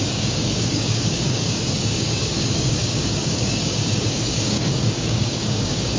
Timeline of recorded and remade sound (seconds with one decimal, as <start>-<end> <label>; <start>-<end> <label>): 0.0-6.0 remade